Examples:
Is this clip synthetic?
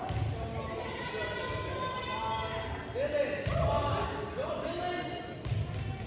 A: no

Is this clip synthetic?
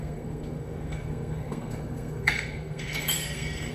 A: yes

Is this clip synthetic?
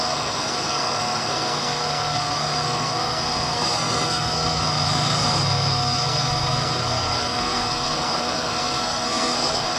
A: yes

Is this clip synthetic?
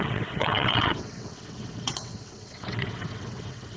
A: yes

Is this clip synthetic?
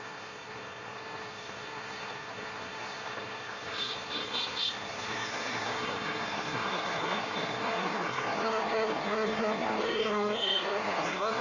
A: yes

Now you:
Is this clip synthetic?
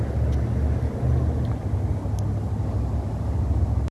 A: no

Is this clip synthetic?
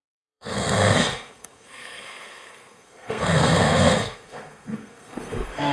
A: yes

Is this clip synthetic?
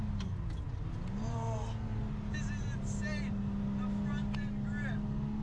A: no